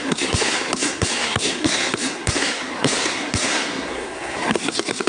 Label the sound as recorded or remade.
remade